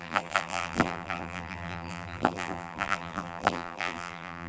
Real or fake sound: fake